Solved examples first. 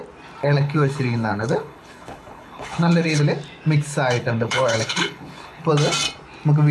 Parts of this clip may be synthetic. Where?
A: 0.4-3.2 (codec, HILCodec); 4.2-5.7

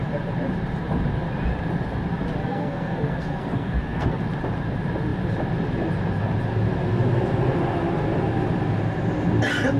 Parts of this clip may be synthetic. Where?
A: 2.4-4.2 (codec, SNAC)

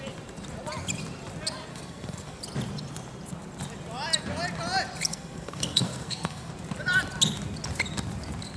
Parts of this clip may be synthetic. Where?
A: 1.7-2.4 (codec, SNAC); 5.1-6.5